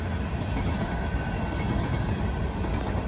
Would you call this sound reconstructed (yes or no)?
no